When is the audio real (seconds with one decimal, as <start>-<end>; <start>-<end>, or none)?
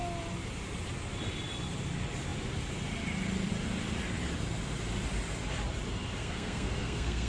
0.0-6.2